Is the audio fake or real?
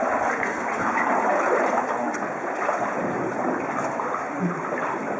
fake